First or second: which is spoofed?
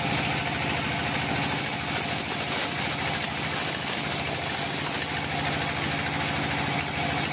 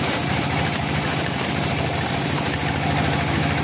second